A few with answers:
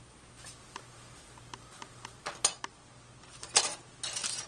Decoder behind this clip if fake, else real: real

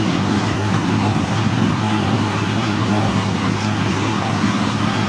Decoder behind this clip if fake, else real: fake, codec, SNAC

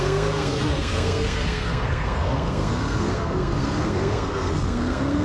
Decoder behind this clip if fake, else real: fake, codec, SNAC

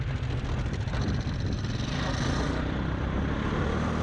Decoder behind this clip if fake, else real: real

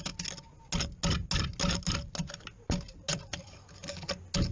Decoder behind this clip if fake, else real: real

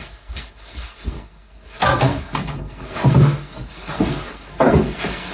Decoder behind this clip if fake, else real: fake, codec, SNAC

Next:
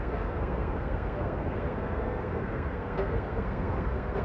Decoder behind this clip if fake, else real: fake, codec, SNAC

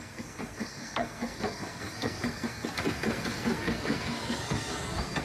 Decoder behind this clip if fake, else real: fake, codec, SNAC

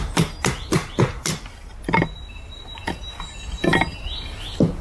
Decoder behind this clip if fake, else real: real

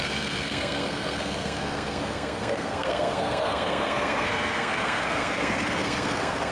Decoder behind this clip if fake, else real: fake, codec, SNAC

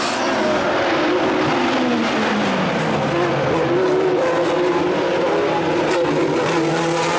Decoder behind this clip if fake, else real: real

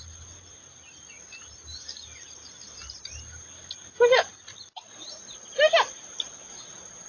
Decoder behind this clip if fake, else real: real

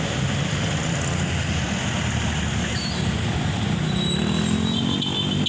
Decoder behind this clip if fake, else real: real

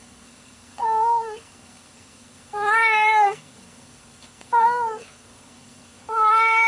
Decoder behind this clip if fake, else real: fake, codec, SNAC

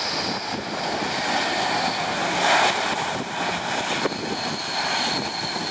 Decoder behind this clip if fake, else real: real